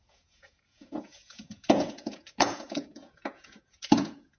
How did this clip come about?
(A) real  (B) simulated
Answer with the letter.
B